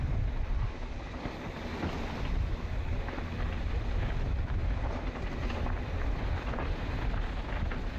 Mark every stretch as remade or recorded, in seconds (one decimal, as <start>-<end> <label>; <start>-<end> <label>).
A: 0.0-8.0 recorded